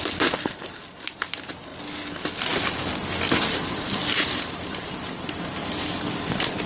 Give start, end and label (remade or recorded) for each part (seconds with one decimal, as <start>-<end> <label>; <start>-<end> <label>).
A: 0.0-6.7 recorded